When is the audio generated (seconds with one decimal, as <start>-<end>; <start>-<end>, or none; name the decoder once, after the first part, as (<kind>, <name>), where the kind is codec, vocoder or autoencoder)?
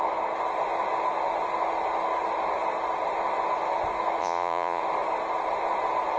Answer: 4.2-4.8 (vocoder, Vocos)